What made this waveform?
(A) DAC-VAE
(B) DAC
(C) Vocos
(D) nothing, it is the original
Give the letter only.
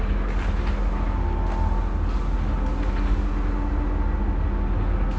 D